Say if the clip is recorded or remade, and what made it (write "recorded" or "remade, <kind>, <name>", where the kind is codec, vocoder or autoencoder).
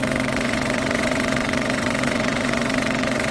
remade, vocoder, WaveNeXt